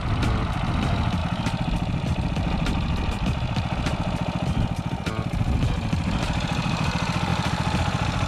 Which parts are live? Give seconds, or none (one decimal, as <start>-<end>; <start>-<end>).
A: 0.0-8.3